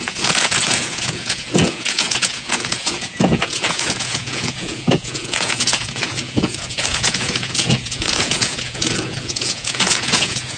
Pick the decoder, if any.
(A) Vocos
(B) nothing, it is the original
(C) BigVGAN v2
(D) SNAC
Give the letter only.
A